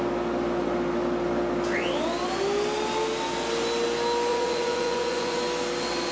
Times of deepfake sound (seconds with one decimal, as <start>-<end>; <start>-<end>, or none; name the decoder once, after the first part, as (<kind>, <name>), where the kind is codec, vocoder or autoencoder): 4.3-5.4 (vocoder, Vocos)